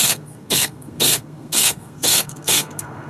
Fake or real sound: fake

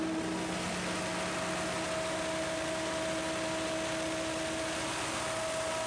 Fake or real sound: real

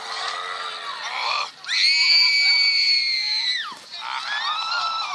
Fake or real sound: real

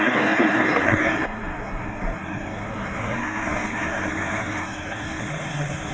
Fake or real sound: fake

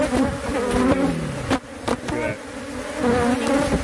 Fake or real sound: real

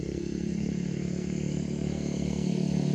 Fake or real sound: fake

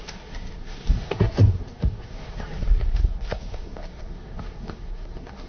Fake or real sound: fake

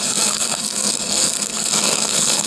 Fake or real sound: fake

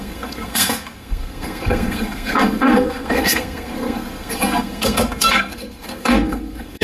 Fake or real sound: fake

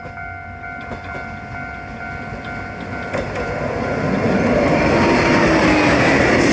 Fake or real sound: real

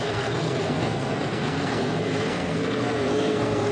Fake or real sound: fake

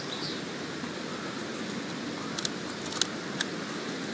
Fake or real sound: real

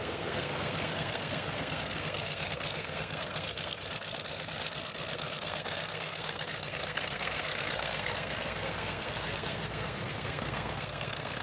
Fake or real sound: fake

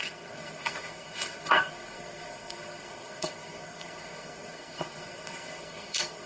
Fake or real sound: fake